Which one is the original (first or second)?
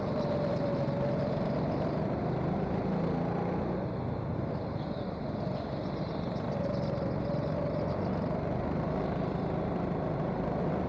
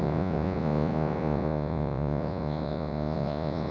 first